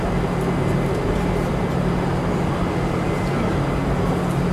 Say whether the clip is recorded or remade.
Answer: recorded